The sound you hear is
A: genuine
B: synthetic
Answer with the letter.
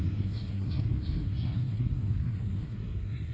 B